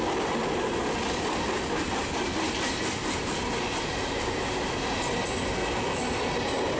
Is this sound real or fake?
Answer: real